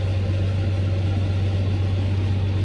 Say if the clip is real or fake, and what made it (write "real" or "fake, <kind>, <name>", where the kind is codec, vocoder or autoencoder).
real